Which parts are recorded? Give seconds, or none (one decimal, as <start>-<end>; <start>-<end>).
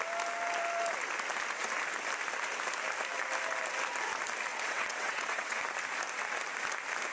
0.0-4.5; 5.6-7.1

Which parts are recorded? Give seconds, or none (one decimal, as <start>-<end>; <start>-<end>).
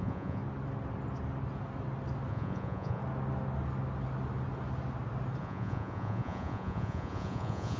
0.4-2.3; 3.0-5.4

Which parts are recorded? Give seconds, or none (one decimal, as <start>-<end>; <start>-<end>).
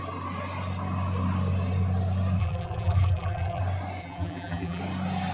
0.0-2.4; 3.6-4.0; 4.8-5.3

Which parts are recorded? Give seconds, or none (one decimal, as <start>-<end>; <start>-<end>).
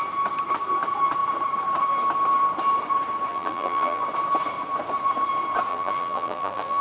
0.0-3.3; 4.0-5.7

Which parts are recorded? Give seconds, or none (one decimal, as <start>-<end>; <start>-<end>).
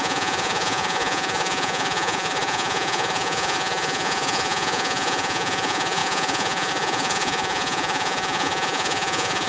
none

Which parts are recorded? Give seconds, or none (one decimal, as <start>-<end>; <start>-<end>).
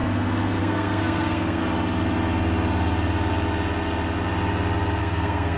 0.0-0.6; 1.6-5.0